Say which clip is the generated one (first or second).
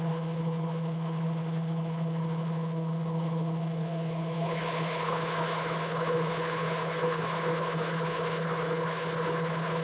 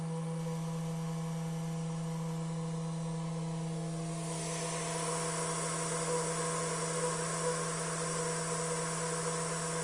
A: first